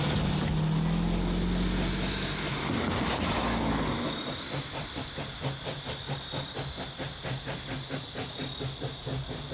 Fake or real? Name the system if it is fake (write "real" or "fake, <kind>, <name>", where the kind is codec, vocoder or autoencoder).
real